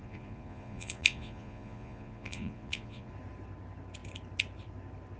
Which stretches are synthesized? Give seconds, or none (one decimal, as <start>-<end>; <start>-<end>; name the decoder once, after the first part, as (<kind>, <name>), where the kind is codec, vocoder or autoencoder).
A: 0.0-3.1 (vocoder, Vocos)